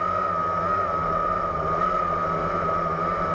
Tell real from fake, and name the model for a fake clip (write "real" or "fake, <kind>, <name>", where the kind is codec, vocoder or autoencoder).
real